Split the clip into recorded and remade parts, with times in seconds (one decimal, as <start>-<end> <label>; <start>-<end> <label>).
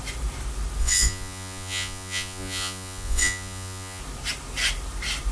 0.0-0.8 recorded; 0.8-4.0 remade; 4.0-5.3 recorded